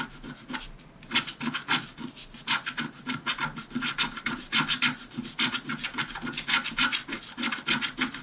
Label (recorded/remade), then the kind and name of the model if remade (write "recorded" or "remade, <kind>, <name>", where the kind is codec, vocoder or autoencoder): recorded